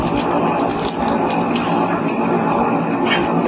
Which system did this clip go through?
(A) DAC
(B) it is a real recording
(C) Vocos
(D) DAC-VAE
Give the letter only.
B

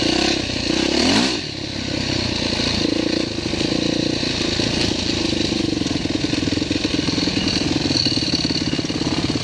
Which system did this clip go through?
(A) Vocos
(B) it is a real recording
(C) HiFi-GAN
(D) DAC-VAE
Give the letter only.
B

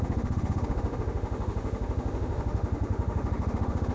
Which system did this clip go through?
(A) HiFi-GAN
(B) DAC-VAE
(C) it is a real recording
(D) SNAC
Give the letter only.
B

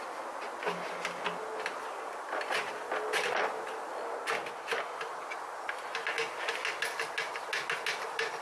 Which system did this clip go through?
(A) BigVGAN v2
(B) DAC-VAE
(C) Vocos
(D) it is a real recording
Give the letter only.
D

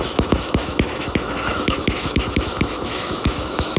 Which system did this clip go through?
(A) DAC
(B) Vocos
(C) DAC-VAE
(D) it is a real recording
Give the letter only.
C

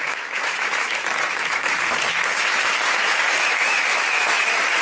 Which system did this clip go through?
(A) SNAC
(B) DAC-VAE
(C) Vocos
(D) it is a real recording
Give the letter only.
B